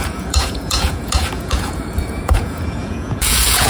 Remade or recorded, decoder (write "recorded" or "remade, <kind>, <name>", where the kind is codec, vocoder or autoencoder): remade, vocoder, Vocos